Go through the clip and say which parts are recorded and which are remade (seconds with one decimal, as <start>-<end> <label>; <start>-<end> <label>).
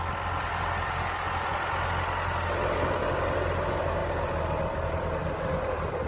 0.0-6.1 recorded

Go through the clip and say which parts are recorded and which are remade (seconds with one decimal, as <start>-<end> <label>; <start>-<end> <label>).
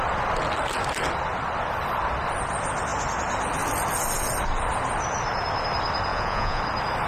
0.0-6.1 recorded; 6.1-6.6 remade; 6.6-7.1 recorded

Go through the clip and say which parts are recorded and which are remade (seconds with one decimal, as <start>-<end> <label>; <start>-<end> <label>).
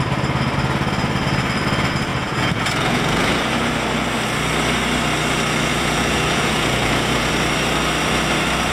0.0-2.1 recorded; 2.1-3.3 remade; 3.3-5.7 recorded; 5.7-7.3 remade; 7.3-8.7 recorded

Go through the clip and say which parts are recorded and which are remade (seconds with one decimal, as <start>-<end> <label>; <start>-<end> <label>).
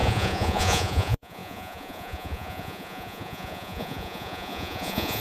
0.0-5.2 remade